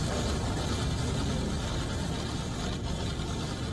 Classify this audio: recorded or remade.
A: recorded